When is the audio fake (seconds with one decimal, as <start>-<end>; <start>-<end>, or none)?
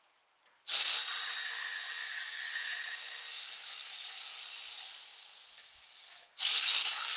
2.0-2.5; 3.3-4.4; 5.6-7.2